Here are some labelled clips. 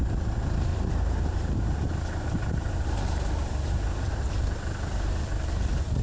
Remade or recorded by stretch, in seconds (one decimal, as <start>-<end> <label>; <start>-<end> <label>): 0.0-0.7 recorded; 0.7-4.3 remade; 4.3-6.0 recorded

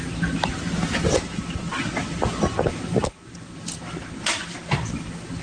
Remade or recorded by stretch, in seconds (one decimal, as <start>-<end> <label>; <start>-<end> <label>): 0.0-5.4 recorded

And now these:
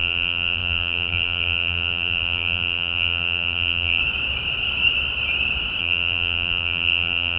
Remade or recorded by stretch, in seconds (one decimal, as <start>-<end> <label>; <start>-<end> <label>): 0.0-4.0 remade; 4.0-5.8 recorded; 5.8-7.4 remade

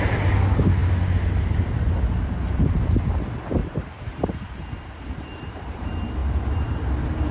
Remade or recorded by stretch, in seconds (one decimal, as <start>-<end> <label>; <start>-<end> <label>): 0.0-3.6 recorded; 3.6-5.8 remade; 5.8-7.3 recorded

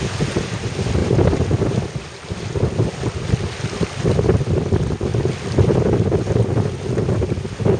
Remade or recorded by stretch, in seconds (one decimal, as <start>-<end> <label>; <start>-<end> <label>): 0.0-1.0 recorded; 1.0-2.3 remade; 2.3-5.1 recorded; 5.1-5.7 remade; 5.7-7.8 recorded